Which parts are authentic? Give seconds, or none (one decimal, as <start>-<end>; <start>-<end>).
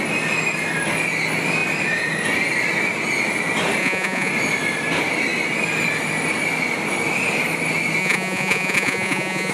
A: 0.0-3.8; 4.3-8.0